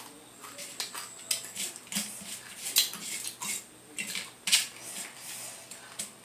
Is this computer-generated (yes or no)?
no